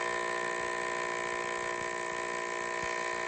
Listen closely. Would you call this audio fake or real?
real